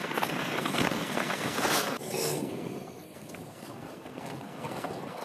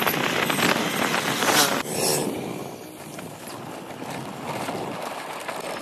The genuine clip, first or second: second